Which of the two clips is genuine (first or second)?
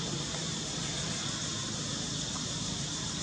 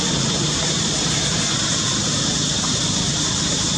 first